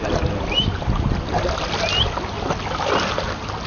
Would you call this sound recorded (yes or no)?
yes